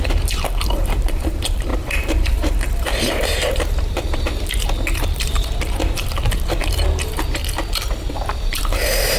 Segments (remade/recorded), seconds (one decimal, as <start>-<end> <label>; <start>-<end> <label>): 0.0-7.4 remade; 7.4-8.1 recorded; 8.1-9.2 remade